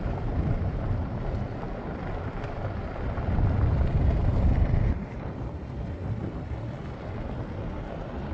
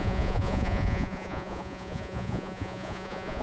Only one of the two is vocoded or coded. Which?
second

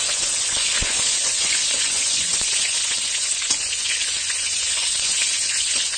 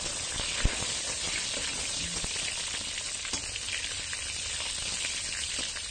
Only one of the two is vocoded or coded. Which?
first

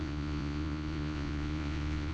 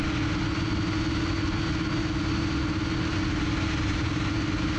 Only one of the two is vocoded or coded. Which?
first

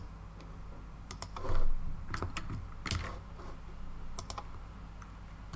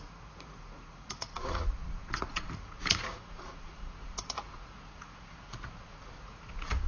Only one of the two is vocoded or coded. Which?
second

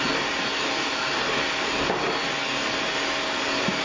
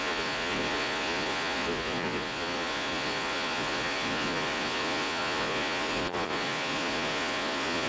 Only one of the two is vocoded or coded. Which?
second